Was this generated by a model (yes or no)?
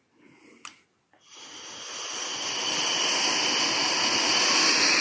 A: no